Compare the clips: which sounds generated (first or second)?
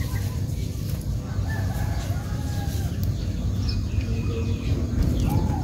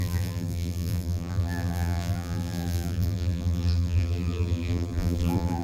second